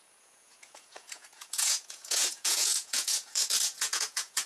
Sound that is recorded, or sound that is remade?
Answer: remade